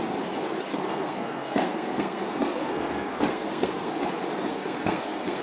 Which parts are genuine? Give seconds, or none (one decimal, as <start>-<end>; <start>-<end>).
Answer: 0.0-0.7; 3.9-4.5